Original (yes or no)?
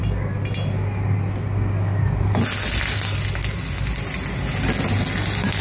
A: yes